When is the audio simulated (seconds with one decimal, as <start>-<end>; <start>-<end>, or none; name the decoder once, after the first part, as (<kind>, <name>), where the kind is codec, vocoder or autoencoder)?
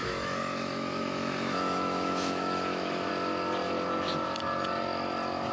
0.0-3.1 (autoencoder, DAC-VAE)